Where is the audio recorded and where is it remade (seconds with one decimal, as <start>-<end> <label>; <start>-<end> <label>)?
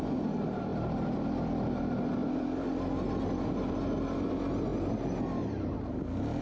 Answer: 0.0-6.4 recorded